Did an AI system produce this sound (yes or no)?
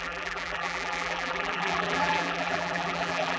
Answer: yes